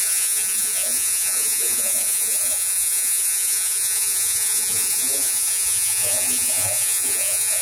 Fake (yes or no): yes